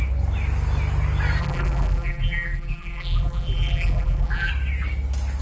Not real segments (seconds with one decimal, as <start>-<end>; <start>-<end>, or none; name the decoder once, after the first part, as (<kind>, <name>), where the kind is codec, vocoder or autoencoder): 1.4-4.5 (vocoder, BigVGAN v2)